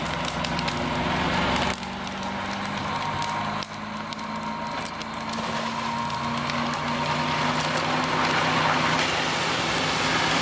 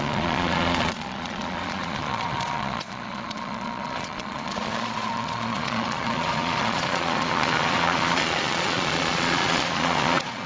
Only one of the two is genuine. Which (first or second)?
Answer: first